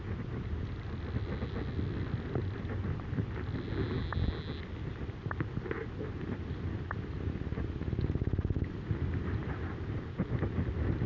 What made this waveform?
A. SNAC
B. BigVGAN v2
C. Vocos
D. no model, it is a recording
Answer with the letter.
D